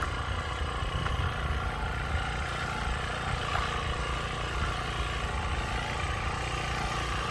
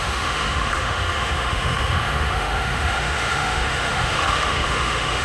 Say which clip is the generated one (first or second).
second